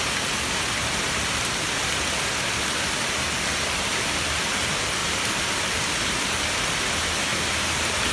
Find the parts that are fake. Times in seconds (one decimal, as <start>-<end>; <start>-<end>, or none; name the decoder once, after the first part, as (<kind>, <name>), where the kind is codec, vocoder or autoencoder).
none